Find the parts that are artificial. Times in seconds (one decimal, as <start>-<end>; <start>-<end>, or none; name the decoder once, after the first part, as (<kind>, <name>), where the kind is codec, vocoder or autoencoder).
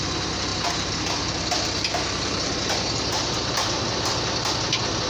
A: 0.5-1.1 (vocoder, BigVGAN v2); 1.9-4.1